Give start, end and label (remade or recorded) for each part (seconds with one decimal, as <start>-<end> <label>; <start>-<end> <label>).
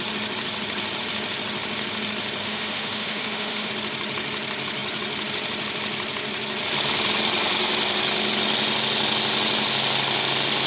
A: 0.0-2.4 recorded; 2.4-3.7 remade; 3.7-10.7 recorded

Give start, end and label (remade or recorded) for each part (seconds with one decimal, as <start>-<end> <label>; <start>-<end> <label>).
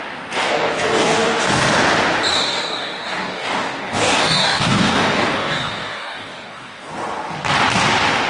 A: 0.0-0.4 recorded; 0.4-1.6 remade; 1.6-2.3 recorded; 2.3-6.9 remade; 6.9-8.3 recorded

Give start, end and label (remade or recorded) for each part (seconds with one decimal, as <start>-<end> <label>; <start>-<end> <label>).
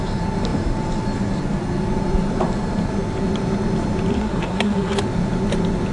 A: 0.0-4.1 recorded; 4.1-5.0 remade; 5.0-5.9 recorded